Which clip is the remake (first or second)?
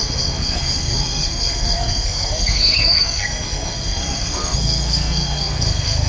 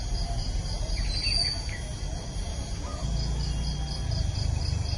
first